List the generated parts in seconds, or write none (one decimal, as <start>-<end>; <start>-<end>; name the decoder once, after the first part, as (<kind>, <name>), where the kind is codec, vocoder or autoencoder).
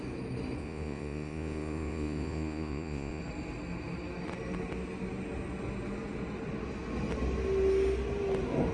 0.6-3.2 (vocoder, Vocos)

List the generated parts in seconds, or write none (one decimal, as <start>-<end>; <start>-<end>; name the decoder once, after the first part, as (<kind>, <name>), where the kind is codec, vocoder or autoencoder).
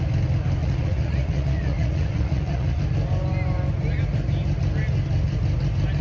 0.6-2.8 (vocoder, Vocos)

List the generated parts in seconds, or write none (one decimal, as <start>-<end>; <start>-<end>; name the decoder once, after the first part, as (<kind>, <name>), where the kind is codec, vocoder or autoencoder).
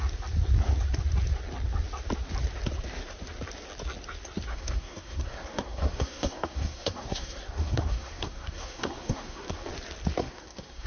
4.5-9.7 (codec, SNAC); 10.2-10.9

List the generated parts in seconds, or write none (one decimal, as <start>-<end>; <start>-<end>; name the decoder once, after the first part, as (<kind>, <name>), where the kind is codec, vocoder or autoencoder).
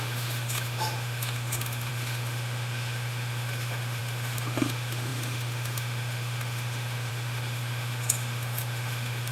0.0-9.3 (autoencoder, DAC-VAE)